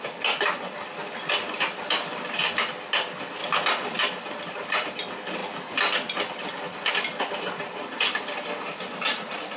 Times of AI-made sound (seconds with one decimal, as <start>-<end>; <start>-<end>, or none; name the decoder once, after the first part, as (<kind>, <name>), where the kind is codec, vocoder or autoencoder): 3.4-4.0 (vocoder, BigVGAN v2)